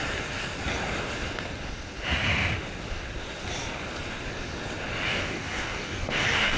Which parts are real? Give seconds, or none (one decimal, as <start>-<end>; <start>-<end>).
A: 0.0-5.1